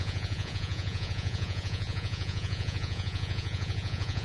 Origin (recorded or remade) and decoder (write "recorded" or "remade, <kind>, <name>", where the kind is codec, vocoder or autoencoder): remade, vocoder, Vocos